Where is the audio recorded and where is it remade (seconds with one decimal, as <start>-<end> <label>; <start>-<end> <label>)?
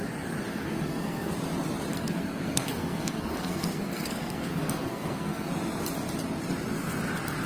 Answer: 0.0-0.5 recorded; 0.5-1.3 remade; 1.3-1.9 recorded; 1.9-5.5 remade; 5.5-7.5 recorded